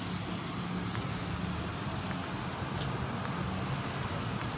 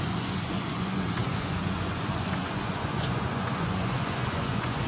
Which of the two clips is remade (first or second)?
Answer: second